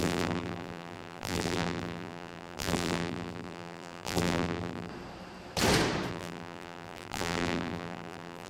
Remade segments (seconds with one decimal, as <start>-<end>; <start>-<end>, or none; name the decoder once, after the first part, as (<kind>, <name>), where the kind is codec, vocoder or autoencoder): 0.0-4.9 (vocoder, BigVGAN v2); 6.1-8.5